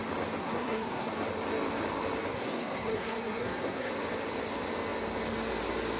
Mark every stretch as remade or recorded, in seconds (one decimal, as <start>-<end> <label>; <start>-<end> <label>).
0.0-0.4 recorded; 0.4-1.1 remade; 1.1-2.3 recorded; 2.3-3.9 remade; 3.9-6.0 recorded